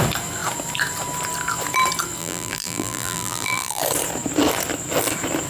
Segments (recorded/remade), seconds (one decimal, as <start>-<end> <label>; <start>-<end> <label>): 0.0-2.2 recorded; 2.2-3.8 remade; 3.8-5.5 recorded